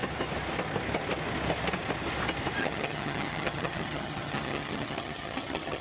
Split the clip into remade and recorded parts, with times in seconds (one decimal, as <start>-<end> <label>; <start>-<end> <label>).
0.0-2.6 recorded; 2.6-5.8 remade